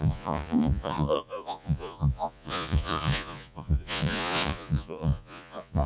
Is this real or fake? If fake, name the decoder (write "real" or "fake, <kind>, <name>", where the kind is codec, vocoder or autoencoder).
fake, vocoder, Vocos